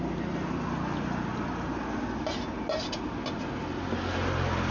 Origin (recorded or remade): recorded